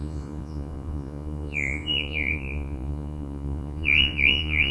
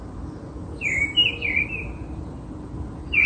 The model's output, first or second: first